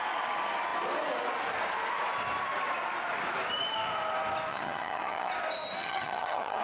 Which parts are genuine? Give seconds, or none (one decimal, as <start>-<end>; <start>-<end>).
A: 0.0-4.5; 5.3-5.8